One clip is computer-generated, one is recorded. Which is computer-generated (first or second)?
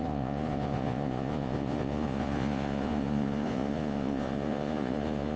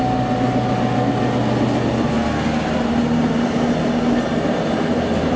first